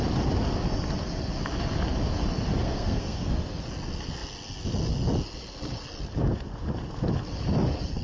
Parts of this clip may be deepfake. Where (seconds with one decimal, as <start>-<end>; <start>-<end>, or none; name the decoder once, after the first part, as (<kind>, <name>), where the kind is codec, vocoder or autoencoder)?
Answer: 2.6-3.3 (codec, SNAC)